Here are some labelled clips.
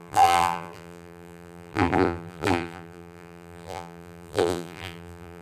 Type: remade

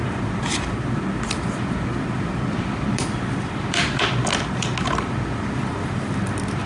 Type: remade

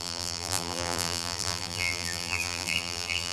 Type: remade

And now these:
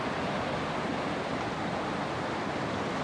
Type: remade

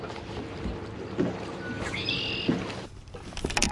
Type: recorded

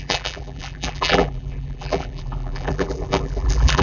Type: remade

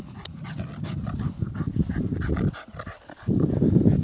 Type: recorded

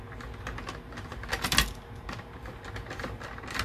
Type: recorded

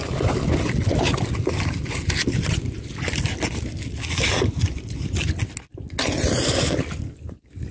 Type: recorded